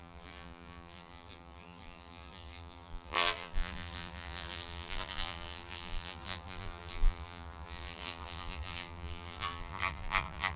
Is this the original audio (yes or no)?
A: no